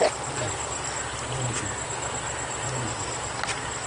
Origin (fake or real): real